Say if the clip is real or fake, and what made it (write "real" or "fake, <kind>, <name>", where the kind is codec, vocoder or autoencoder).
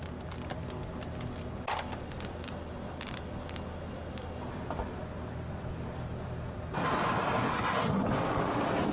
real